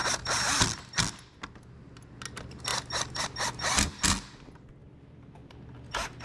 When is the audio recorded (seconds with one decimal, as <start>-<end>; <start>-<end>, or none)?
0.0-4.8; 5.5-6.2